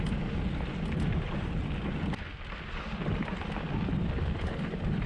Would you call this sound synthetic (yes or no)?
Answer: no